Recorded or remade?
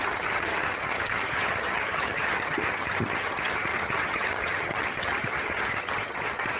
remade